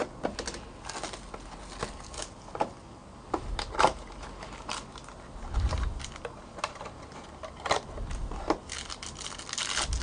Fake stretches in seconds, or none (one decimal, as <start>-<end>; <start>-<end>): none